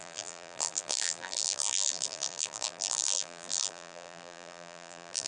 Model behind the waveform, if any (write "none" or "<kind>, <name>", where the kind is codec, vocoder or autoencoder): vocoder, BigVGAN v2